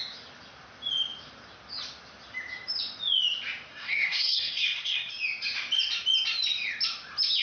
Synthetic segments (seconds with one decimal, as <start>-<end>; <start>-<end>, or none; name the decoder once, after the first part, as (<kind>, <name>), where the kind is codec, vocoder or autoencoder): 3.7-5.1 (codec, SNAC)